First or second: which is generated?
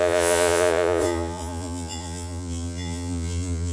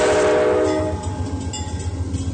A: first